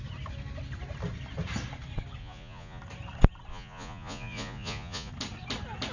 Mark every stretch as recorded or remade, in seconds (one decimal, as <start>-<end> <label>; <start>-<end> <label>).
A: 0.0-2.2 recorded; 2.2-2.8 remade; 2.8-3.5 recorded; 3.5-5.1 remade; 5.1-5.9 recorded